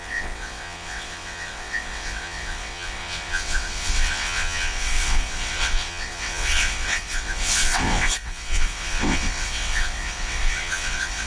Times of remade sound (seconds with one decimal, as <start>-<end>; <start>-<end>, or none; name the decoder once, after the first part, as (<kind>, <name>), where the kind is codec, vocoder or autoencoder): 0.0-11.3 (vocoder, WaveNeXt)